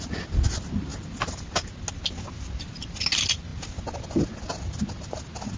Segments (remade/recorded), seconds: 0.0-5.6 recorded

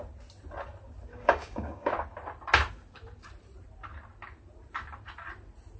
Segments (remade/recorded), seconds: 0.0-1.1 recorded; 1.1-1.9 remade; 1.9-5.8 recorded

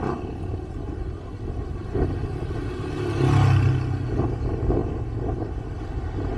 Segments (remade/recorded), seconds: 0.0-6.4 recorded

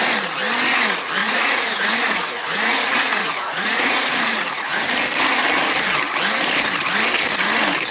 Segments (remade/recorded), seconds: 0.0-1.2 recorded; 1.2-4.8 remade; 4.8-7.9 recorded

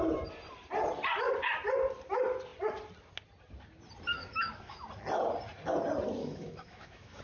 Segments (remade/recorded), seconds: 0.0-4.1 recorded; 4.1-4.8 remade; 4.8-6.2 recorded; 6.2-7.2 remade

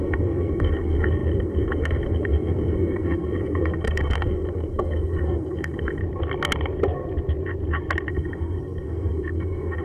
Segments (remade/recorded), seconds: 0.0-6.0 remade; 6.0-8.1 recorded; 8.1-9.8 remade